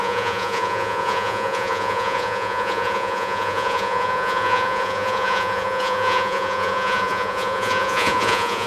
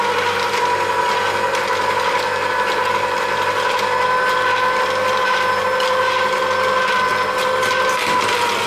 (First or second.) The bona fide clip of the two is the second